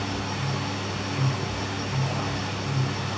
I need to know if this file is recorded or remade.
recorded